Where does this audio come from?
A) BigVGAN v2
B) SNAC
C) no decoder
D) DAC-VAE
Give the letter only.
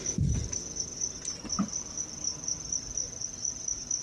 C